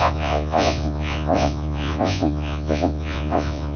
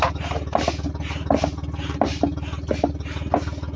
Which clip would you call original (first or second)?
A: second